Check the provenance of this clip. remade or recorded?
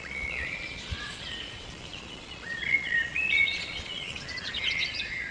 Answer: remade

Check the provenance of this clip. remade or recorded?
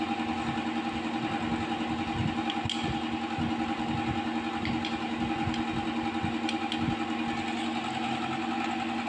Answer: recorded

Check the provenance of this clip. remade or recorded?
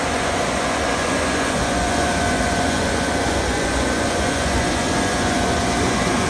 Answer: remade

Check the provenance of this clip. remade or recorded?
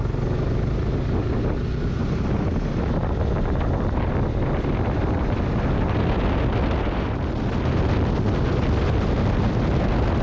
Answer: recorded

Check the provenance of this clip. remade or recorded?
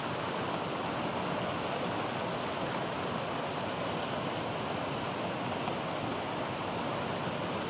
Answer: recorded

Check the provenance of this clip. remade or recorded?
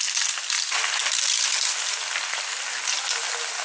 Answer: recorded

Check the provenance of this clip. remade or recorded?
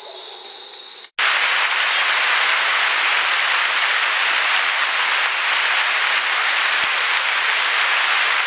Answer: recorded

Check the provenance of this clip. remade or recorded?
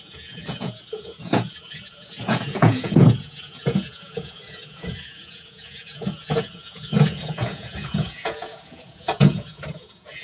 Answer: remade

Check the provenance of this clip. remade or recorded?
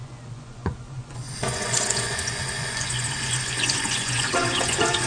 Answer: remade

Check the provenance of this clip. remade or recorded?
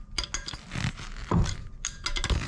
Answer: recorded